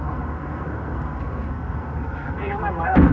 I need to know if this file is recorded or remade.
remade